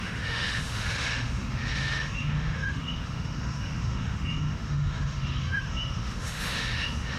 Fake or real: fake